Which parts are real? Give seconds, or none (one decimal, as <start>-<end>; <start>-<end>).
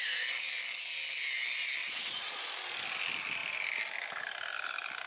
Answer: 0.0-1.8; 2.4-5.1